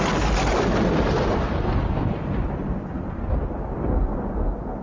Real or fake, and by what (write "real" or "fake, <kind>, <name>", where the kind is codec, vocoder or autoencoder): real